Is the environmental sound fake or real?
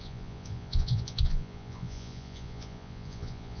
fake